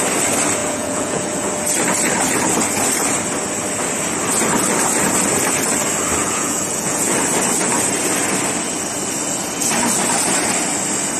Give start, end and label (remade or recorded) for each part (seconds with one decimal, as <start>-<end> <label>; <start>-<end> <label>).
0.0-0.6 recorded; 0.6-1.5 remade; 1.5-6.2 recorded; 6.2-7.1 remade; 7.1-11.2 recorded